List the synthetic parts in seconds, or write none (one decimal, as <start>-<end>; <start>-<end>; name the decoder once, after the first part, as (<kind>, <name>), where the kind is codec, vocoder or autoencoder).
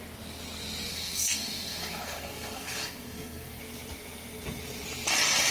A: 0.9-3.6 (codec, SNAC)